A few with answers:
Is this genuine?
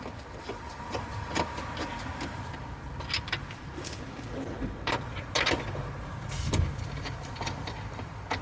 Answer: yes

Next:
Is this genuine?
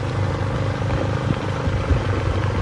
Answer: yes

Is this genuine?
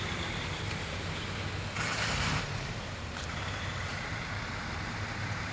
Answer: no